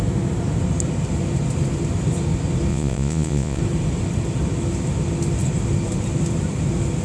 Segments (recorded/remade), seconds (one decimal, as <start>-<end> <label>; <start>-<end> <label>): 0.0-2.7 recorded; 2.7-3.6 remade; 3.6-7.0 recorded